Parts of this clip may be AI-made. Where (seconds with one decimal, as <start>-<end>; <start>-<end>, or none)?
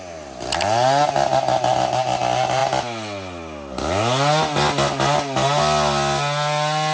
none